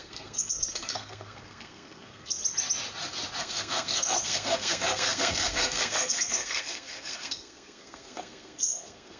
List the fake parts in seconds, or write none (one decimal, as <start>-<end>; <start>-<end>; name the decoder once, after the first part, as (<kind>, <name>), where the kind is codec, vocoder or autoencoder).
0.0-2.4 (codec, SNAC); 3.4-9.2